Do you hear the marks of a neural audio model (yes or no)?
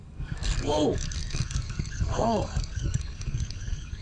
yes